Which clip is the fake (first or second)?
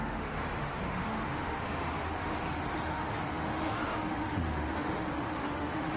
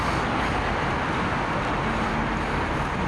first